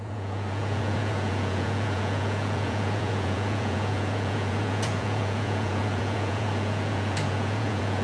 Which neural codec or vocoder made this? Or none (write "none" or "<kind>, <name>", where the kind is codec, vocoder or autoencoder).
vocoder, Vocos